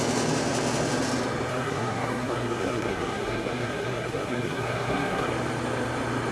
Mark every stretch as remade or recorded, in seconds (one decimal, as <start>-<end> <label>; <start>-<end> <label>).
0.0-1.5 recorded; 1.5-5.3 remade; 5.3-6.3 recorded